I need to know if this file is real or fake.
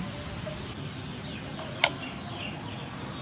real